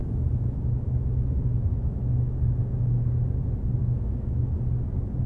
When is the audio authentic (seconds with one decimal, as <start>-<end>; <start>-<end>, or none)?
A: 3.1-3.8; 4.6-5.3